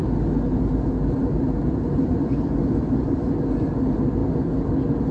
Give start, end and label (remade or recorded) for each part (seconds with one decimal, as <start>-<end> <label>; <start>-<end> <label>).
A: 0.0-5.1 recorded